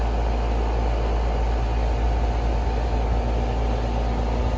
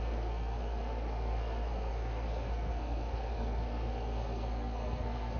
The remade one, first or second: second